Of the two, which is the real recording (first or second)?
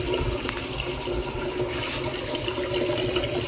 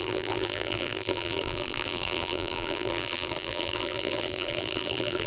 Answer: first